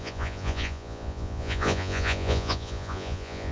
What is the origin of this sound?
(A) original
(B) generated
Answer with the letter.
B